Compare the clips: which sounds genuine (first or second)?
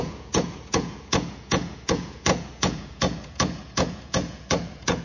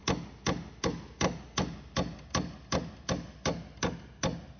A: second